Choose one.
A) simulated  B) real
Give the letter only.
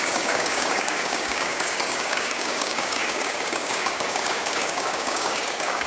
A